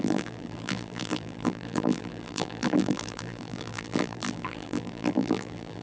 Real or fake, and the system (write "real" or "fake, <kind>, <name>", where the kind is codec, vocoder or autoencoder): fake, vocoder, BigVGAN v2